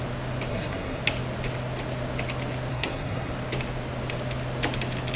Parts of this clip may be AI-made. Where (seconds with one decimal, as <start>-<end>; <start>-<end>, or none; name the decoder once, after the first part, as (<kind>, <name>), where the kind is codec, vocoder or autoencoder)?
0.5-1.0 (codec, SNAC); 2.7-3.3